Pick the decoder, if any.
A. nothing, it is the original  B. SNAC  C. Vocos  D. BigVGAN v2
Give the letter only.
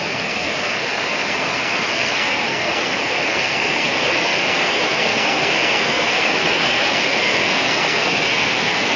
B